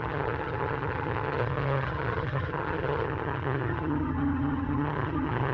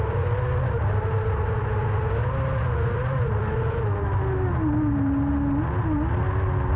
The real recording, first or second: second